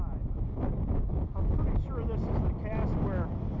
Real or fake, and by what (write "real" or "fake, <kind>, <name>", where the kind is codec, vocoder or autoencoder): real